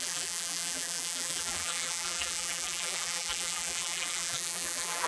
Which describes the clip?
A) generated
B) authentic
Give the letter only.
A